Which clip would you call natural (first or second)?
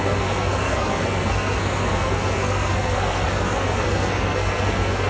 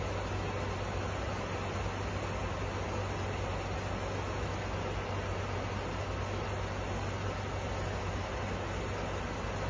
second